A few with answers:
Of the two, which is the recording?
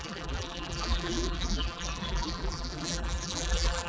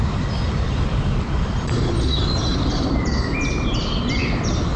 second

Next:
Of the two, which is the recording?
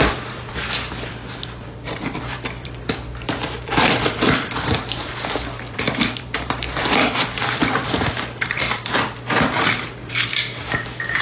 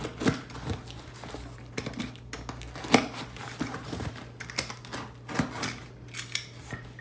second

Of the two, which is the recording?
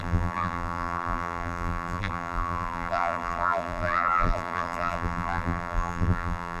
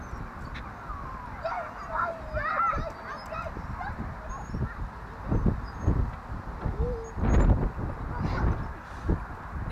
second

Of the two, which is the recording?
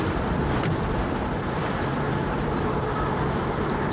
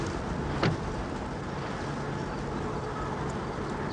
second